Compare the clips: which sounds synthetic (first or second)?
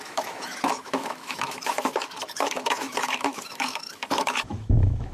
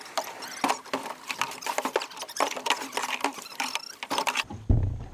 first